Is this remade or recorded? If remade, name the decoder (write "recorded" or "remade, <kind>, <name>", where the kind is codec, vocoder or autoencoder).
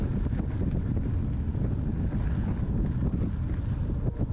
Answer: recorded